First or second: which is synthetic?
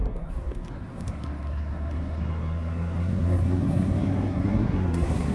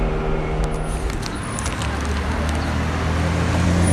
first